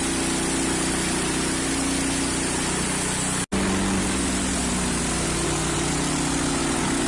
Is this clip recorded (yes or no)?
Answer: yes